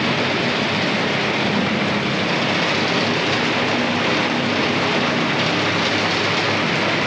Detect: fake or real real